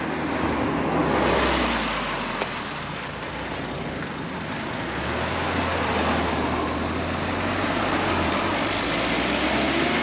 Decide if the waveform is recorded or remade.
recorded